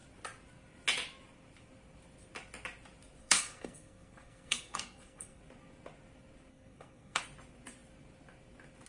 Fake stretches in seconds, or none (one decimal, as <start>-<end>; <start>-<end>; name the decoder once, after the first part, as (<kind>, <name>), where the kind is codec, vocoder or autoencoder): 3.2-5.4 (codec, SNAC); 6.5-7.2

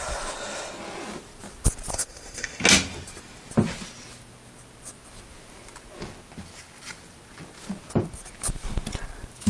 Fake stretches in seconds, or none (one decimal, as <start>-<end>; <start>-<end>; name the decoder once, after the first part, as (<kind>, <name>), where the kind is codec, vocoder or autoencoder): 1.9-2.6 (codec, SNAC)